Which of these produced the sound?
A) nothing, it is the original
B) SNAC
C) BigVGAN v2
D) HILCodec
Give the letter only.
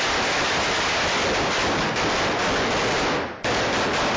A